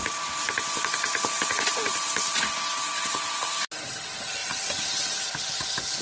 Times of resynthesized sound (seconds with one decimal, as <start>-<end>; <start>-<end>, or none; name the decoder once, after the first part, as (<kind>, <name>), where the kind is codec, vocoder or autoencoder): 4.4-5.6 (vocoder, BigVGAN v2)